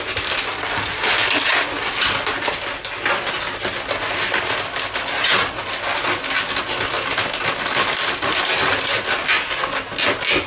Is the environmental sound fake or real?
real